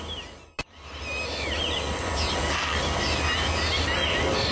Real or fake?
real